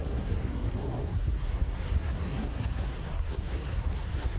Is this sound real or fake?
fake